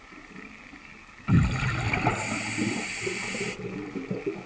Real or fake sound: real